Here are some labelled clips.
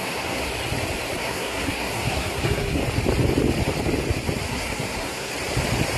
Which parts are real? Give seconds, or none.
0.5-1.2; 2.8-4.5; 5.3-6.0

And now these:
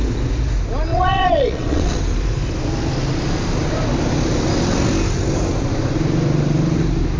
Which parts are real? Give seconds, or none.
0.0-0.9; 2.0-7.2